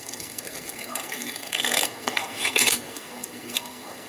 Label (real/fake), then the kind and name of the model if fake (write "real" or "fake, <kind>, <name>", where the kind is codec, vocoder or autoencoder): fake, codec, SNAC